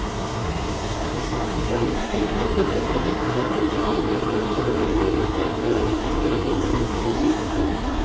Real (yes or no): no